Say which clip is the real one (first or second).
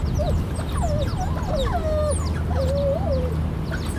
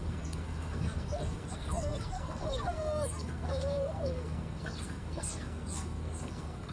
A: first